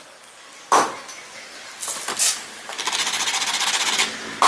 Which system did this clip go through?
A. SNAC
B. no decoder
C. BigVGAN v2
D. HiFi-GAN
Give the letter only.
B